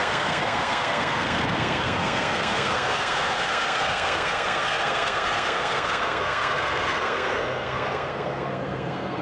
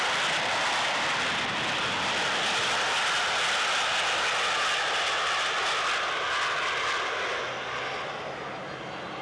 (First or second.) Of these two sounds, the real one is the second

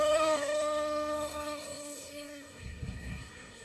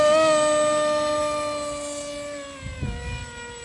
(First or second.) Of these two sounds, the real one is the second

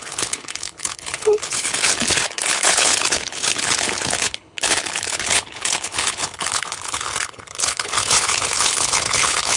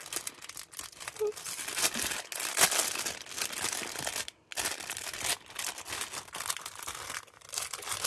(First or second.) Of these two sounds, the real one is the second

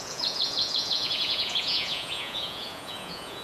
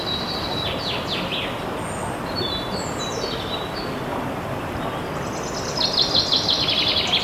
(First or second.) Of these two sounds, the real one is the second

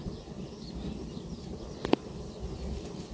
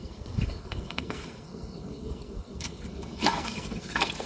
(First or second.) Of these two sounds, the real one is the first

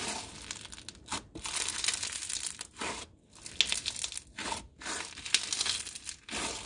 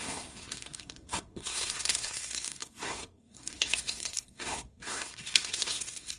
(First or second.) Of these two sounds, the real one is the first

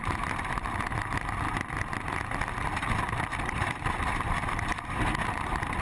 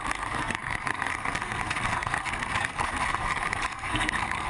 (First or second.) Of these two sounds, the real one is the first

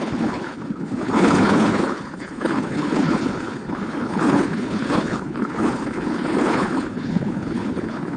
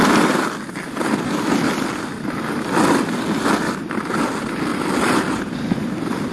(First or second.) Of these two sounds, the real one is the second